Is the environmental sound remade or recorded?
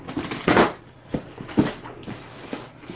recorded